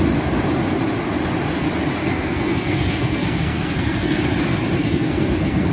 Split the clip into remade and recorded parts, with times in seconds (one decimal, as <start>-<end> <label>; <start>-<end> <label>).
0.0-2.0 recorded; 2.0-4.2 remade; 4.2-4.8 recorded; 4.8-5.7 remade